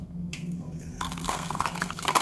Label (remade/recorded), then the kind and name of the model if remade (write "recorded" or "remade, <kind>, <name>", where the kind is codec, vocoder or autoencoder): remade, codec, SNAC